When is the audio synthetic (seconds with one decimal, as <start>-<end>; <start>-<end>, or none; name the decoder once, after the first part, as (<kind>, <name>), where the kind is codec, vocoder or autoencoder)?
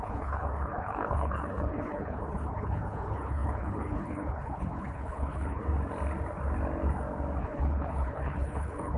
0.0-5.6 (codec, HILCodec); 7.4-9.0